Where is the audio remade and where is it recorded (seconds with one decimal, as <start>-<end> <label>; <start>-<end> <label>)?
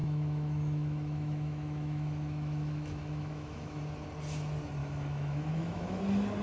0.0-3.8 remade; 3.8-4.8 recorded; 4.8-6.0 remade; 6.0-6.4 recorded